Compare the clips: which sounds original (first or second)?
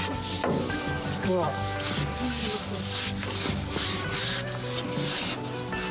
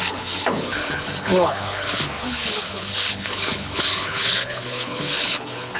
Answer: first